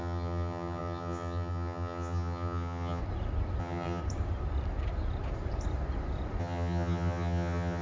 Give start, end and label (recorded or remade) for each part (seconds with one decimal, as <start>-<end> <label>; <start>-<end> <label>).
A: 0.0-3.0 remade; 3.0-3.6 recorded; 3.6-4.0 remade; 4.0-6.4 recorded; 6.4-7.8 remade